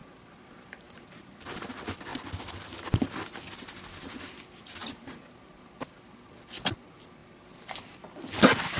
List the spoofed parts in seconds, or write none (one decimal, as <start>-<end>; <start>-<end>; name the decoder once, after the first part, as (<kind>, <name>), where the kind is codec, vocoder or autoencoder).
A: 0.0-1.7 (vocoder, BigVGAN v2); 4.8-6.0; 7.2-7.8